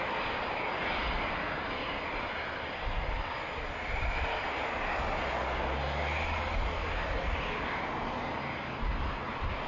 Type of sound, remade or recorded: recorded